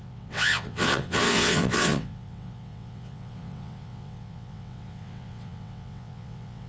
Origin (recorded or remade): remade